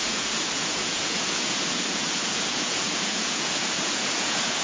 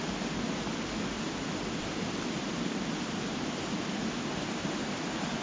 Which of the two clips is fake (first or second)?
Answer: first